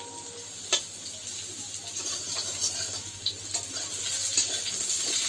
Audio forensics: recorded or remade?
recorded